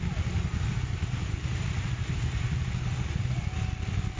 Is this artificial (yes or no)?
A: no